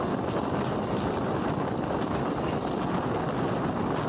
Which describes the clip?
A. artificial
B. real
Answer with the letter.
B